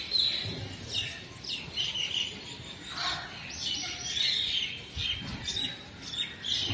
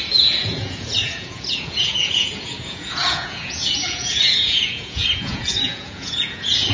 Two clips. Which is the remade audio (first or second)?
second